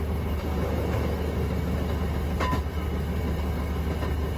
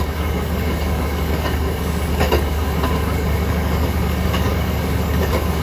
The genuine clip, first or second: first